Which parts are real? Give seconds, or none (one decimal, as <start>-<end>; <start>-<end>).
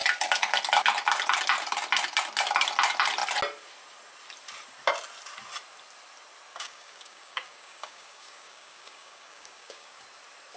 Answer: 0.0-6.5; 10.0-10.6